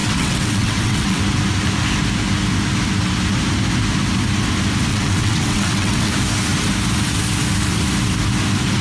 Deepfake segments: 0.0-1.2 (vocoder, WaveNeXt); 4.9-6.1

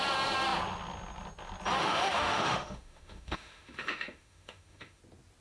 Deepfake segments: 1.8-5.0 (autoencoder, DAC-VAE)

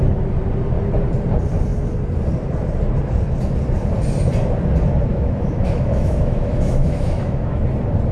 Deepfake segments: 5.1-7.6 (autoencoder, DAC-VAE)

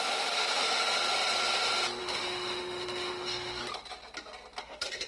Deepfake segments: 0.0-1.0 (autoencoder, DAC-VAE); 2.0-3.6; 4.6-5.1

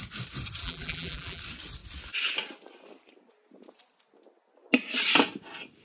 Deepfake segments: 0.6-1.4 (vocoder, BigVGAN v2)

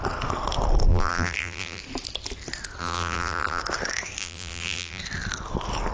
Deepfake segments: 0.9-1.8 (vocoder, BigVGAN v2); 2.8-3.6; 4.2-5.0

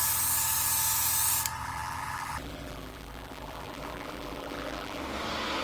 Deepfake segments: 1.6-5.0 (vocoder, BigVGAN v2)

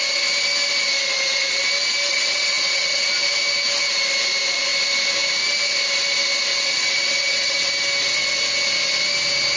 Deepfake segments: 1.0-1.6 (vocoder, WaveNeXt); 2.1-3.1; 6.5-7.7